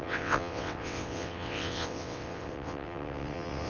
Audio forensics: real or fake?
fake